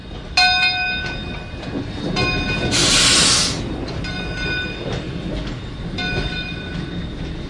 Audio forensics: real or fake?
real